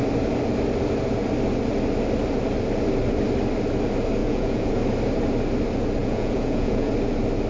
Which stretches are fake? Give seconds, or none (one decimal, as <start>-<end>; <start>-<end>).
4.2-4.7; 6.0-6.9